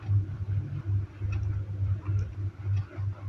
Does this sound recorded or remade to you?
recorded